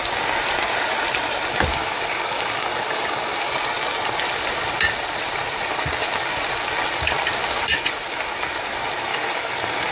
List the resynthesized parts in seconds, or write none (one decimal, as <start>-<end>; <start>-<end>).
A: 1.7-3.5; 9.1-9.9